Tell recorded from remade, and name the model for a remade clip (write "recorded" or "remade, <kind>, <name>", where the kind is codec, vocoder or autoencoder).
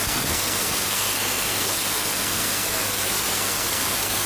remade, codec, SNAC